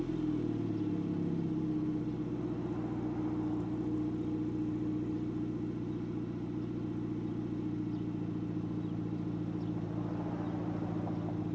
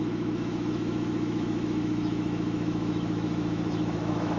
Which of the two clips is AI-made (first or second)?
second